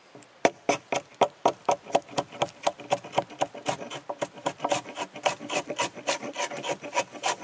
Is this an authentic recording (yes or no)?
no